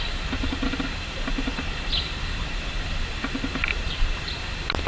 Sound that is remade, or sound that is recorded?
recorded